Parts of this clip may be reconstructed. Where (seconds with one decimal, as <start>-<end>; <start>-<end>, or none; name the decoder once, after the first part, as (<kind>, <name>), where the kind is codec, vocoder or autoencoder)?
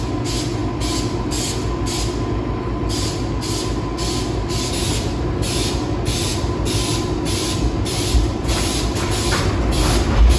6.3-9.5 (vocoder, BigVGAN v2)